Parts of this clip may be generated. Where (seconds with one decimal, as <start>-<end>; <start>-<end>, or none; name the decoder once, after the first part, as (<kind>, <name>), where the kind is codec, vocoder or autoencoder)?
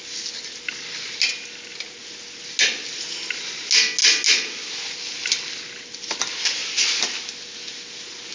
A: none